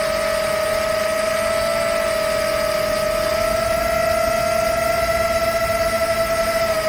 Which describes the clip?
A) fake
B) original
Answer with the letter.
B